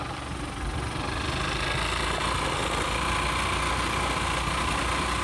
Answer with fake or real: real